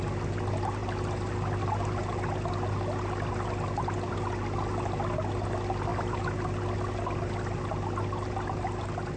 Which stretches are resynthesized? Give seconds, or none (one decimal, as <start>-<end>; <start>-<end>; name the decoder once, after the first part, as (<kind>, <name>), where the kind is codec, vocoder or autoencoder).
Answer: none